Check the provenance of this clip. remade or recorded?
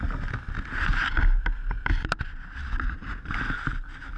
recorded